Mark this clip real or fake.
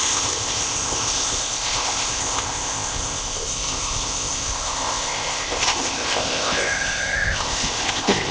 fake